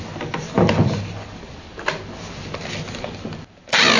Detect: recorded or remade recorded